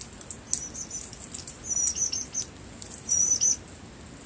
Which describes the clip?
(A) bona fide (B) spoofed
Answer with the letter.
A